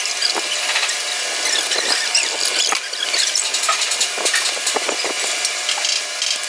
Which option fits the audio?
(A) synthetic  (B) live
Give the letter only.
B